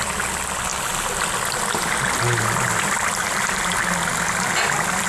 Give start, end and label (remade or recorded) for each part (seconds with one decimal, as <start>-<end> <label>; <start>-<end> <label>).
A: 0.0-5.1 recorded